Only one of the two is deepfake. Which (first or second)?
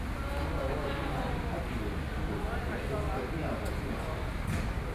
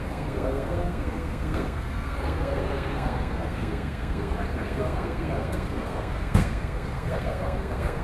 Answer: second